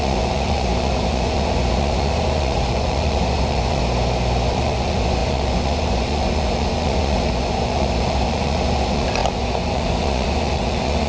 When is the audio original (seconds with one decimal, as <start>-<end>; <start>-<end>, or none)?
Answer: 3.8-4.5